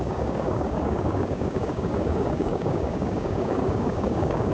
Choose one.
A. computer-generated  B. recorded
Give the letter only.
A